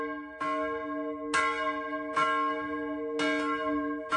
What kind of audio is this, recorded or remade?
recorded